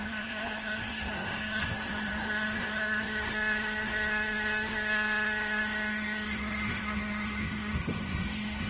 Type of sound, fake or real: fake